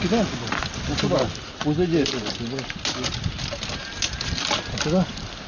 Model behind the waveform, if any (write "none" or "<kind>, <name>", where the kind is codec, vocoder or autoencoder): none